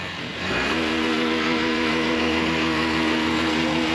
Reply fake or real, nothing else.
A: fake